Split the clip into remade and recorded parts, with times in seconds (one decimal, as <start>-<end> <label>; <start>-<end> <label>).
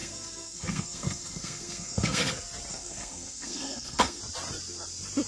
0.0-2.3 remade; 2.3-2.7 recorded; 2.7-4.2 remade; 4.2-5.3 recorded